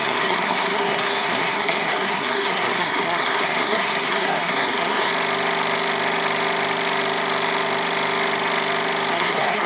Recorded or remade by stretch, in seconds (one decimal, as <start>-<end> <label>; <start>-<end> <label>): 0.0-5.1 remade; 5.1-9.1 recorded; 9.1-9.7 remade